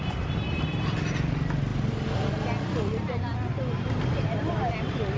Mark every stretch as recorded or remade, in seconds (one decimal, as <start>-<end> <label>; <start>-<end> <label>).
0.0-5.2 recorded

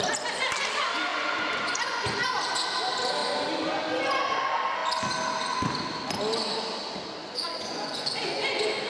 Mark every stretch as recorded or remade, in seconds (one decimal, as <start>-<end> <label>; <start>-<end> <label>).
0.0-1.1 recorded; 1.1-2.3 remade; 2.3-7.2 recorded; 7.2-8.5 remade; 8.5-8.9 recorded

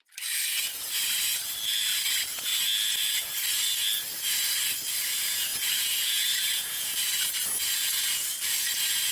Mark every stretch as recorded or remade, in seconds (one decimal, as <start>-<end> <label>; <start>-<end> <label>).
0.0-5.5 recorded; 5.5-7.1 remade; 7.1-9.1 recorded

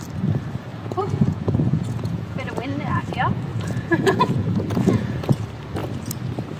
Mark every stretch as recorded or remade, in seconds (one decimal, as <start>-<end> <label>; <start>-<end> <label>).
0.0-0.7 recorded; 0.7-2.5 remade; 2.5-3.5 recorded; 3.5-5.3 remade; 5.3-6.6 recorded

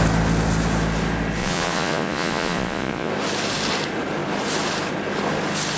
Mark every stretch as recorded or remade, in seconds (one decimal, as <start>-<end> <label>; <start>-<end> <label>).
0.0-1.4 recorded; 1.4-3.1 remade; 3.1-5.8 recorded

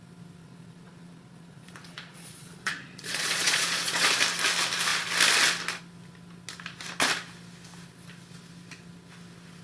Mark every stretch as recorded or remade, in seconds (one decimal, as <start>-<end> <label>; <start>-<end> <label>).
0.0-0.4 recorded; 0.4-4.1 remade; 4.1-9.6 recorded